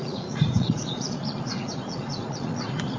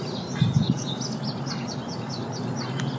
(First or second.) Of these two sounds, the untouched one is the second